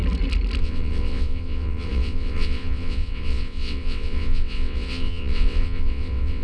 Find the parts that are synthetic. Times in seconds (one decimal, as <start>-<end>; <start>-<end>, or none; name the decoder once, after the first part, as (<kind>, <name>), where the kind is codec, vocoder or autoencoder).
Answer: 0.6-6.4 (vocoder, WaveNeXt)